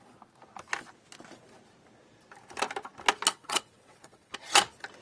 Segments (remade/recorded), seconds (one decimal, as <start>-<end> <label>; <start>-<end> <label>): 0.0-3.3 recorded; 3.3-4.3 remade; 4.3-5.0 recorded